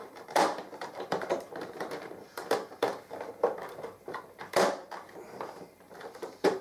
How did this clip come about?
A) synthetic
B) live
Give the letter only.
A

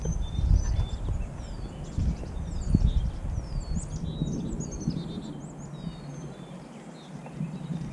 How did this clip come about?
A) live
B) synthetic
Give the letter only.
A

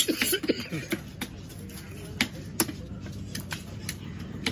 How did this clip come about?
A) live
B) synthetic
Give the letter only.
A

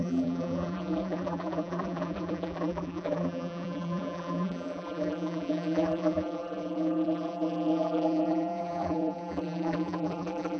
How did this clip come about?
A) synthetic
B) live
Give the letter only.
A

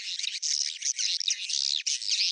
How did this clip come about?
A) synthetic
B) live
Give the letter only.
B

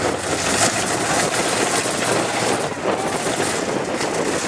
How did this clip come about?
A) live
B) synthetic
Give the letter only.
A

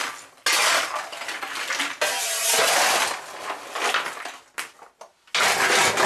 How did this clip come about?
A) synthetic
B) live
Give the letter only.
B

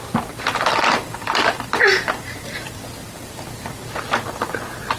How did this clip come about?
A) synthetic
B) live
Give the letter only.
A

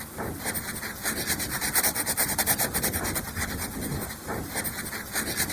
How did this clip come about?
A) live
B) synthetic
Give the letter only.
A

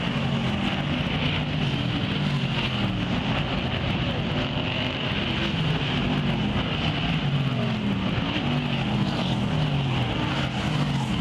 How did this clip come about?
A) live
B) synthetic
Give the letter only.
A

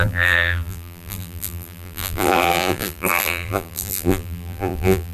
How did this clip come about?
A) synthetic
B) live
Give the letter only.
A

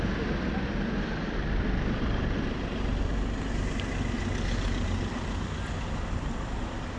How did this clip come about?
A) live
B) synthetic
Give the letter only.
A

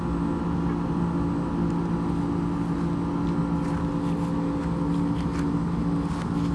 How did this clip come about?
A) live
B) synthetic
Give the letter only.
A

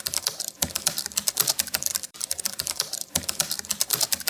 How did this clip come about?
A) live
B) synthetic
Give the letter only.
B